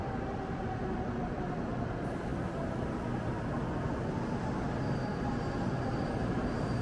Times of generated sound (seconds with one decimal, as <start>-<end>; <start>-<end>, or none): none